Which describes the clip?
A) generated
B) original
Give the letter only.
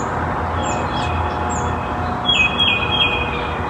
B